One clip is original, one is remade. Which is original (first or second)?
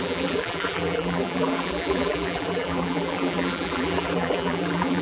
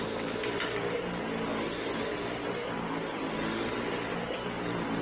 second